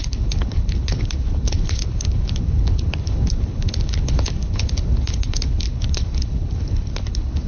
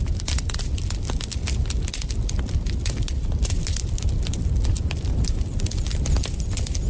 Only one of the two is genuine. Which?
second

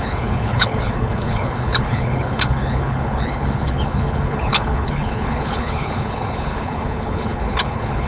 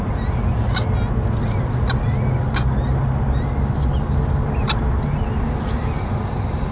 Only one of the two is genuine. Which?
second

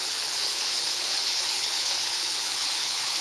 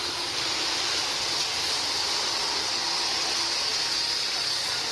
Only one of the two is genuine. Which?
second